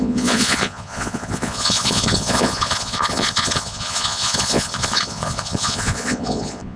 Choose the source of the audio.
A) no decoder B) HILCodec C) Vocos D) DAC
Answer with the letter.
C